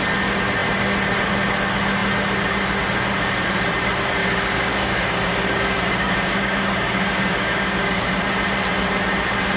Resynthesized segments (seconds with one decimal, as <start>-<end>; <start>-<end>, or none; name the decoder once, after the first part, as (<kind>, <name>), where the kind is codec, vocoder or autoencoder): 4.2-8.1 (codec, DAC)